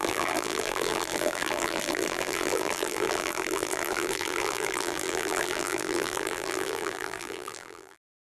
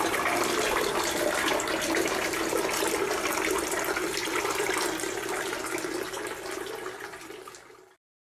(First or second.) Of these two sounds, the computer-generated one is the first